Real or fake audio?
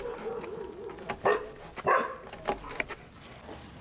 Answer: real